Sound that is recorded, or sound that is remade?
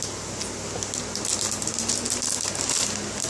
recorded